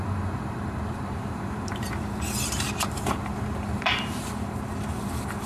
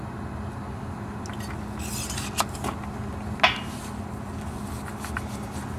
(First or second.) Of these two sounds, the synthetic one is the first